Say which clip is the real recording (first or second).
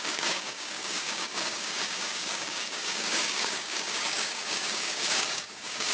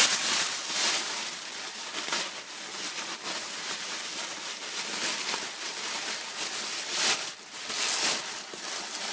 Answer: second